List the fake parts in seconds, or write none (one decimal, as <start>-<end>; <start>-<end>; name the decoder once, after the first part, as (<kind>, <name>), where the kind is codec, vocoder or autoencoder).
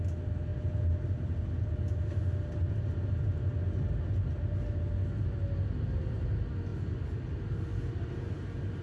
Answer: none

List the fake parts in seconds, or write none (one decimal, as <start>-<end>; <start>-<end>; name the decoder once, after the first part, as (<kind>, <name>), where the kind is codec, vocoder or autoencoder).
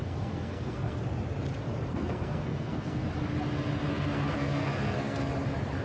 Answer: 0.0-1.0 (codec, SNAC); 1.9-3.0; 3.9-5.3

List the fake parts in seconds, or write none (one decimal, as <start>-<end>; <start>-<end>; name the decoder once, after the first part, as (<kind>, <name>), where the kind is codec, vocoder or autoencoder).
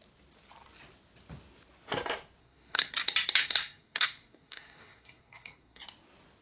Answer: 2.4-2.9 (codec, SNAC); 3.4-5.8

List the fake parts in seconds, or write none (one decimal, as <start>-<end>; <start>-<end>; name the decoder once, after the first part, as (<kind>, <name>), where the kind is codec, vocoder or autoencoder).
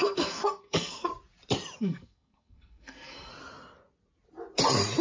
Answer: 0.0-1.1 (codec, SNAC); 1.8-3.3